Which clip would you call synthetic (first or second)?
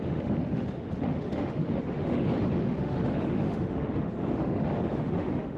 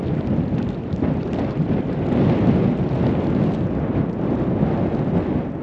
first